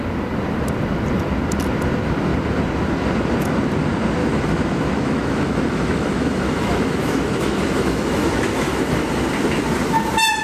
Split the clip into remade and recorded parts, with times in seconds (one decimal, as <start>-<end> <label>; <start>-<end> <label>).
0.0-4.2 recorded; 4.2-8.9 remade; 8.9-10.4 recorded